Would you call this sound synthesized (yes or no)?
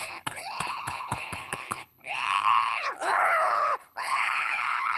yes